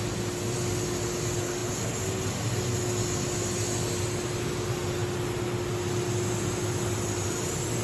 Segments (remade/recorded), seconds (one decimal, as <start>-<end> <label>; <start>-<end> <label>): 0.0-7.8 recorded